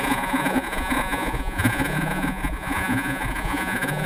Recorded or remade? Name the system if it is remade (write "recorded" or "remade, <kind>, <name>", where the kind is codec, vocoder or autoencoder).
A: remade, vocoder, Vocos